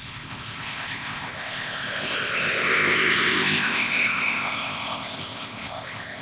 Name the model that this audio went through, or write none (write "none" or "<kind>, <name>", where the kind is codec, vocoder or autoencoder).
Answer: codec, ZipCodec